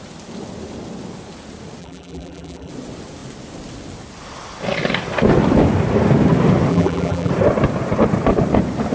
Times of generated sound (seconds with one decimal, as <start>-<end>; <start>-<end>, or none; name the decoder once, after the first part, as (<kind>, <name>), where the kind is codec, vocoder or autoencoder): 1.8-2.7 (vocoder, BigVGAN v2); 6.7-7.3